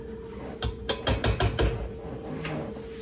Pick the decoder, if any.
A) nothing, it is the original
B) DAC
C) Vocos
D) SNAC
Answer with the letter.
A